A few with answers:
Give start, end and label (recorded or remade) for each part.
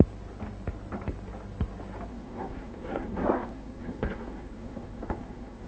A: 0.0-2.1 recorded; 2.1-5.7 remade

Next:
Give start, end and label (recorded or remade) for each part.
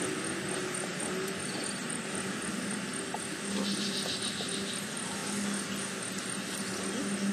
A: 0.0-7.3 recorded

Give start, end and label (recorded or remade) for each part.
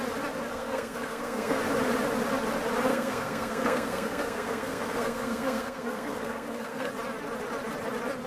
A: 0.0-0.5 recorded; 0.5-1.6 remade; 1.6-2.9 recorded; 2.9-6.9 remade; 6.9-8.3 recorded